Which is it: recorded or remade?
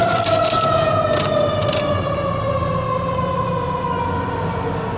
recorded